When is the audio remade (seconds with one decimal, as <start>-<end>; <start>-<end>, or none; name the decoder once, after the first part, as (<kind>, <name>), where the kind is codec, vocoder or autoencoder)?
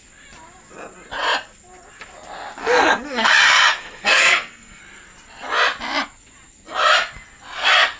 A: 2.6-3.3 (codec, SNAC); 3.8-4.8